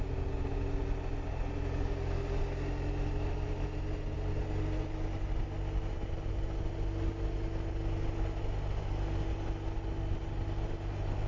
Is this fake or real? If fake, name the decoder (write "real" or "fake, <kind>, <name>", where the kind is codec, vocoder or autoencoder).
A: real